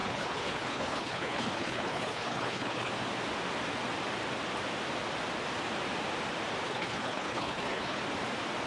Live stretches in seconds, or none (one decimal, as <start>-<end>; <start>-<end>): 2.9-6.6; 8.0-8.7